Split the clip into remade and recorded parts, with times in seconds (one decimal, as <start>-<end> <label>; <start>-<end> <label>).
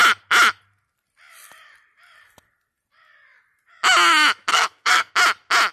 0.0-4.5 recorded; 4.5-5.1 remade; 5.1-5.7 recorded